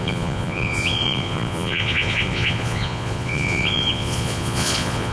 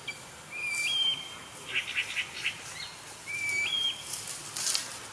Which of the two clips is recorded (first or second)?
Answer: second